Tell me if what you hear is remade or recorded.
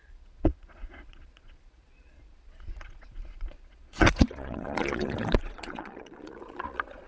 remade